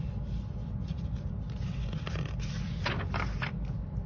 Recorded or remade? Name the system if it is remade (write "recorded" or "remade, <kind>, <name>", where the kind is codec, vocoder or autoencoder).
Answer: recorded